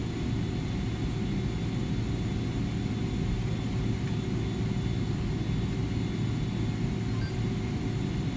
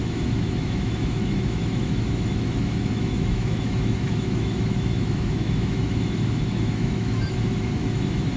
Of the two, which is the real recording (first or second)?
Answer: first